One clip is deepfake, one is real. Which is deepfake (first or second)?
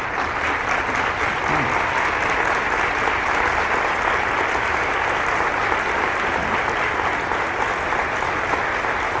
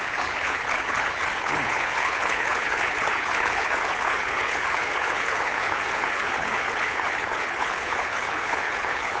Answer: second